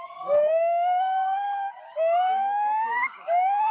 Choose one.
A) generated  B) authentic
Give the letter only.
A